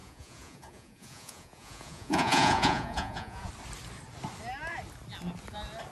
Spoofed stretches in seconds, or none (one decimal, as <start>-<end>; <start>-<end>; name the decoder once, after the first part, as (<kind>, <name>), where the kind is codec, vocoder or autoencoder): 0.0-3.5 (vocoder, Vocos)